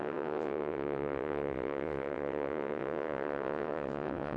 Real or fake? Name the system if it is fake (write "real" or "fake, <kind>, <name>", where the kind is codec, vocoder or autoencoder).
fake, vocoder, WaveNeXt